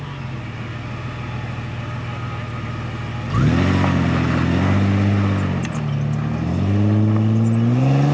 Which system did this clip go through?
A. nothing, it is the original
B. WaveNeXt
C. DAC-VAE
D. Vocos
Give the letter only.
A